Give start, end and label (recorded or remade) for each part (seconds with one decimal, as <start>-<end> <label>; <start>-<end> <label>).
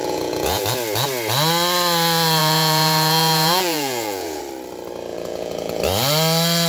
0.0-0.6 remade; 0.6-2.4 recorded; 2.4-4.4 remade; 4.4-5.1 recorded; 5.1-5.8 remade; 5.8-6.7 recorded